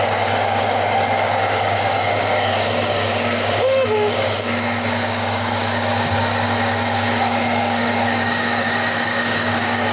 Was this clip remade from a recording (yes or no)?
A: yes